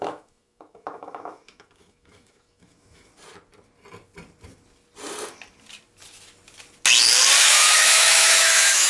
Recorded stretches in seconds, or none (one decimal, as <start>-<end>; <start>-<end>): 3.1-7.4